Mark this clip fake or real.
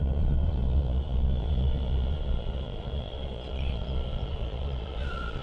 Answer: fake